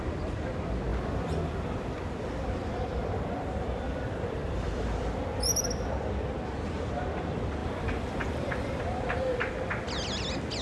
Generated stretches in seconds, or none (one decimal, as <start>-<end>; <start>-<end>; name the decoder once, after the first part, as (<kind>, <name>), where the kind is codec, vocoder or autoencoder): 0.9-5.9 (vocoder, BigVGAN v2); 7.6-8.8